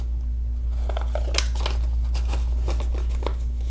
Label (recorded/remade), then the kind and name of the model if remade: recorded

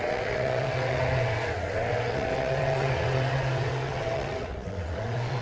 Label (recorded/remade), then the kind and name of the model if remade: remade, vocoder, WaveNeXt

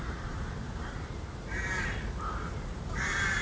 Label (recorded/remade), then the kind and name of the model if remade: remade, vocoder, BigVGAN v2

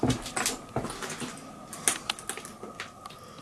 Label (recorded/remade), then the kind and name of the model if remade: recorded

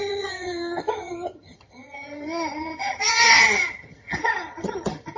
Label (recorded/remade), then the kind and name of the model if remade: remade, vocoder, HiFi-GAN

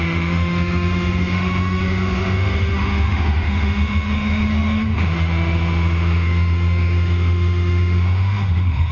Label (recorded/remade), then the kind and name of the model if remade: remade, autoencoder, DAC-VAE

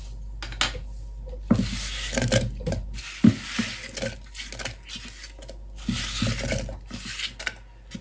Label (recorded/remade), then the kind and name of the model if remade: recorded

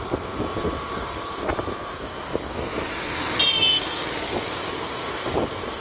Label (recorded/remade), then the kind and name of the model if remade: recorded